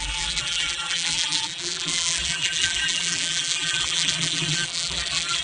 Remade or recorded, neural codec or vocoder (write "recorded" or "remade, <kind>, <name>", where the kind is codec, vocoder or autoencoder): remade, vocoder, BigVGAN v2